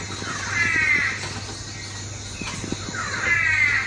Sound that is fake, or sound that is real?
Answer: real